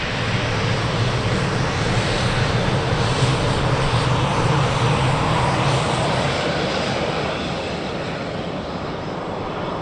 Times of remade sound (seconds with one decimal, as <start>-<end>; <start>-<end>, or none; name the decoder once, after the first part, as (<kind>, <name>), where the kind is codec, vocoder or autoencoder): 4.3-4.9 (vocoder, BigVGAN v2)